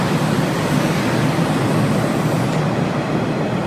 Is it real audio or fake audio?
real